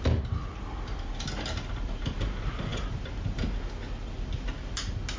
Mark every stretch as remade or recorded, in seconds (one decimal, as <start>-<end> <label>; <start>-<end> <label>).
0.0-5.2 recorded